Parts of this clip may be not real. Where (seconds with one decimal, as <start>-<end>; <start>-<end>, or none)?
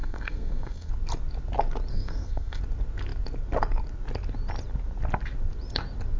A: 0.0-0.9; 1.9-2.6